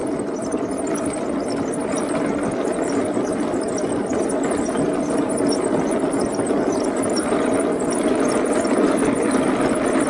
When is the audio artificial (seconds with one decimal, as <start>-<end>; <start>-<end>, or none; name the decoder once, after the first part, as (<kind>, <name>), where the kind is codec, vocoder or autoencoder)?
none